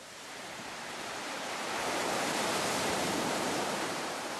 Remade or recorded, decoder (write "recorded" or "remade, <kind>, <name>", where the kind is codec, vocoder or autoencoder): remade, vocoder, BigVGAN v2